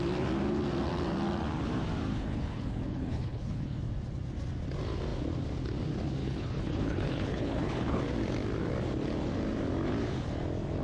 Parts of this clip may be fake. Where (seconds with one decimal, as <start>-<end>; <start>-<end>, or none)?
2.1-3.8; 6.2-8.0